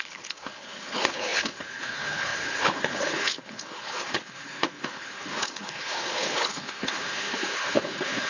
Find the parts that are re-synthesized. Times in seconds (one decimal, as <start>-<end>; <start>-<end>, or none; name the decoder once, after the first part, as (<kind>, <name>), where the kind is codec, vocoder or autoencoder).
0.0-8.3 (codec, HILCodec)